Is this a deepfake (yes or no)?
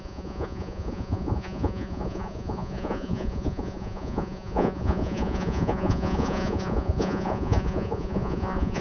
yes